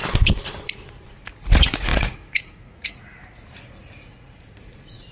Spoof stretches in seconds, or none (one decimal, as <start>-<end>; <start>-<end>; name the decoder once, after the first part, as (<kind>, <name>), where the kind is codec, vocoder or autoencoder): 1.1-5.1 (vocoder, Vocos)